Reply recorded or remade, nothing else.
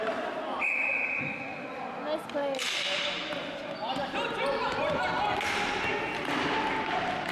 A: recorded